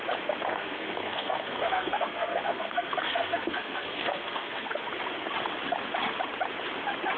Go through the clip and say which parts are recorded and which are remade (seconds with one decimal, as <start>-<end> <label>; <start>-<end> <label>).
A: 0.0-0.5 recorded; 0.5-4.8 remade; 4.8-7.2 recorded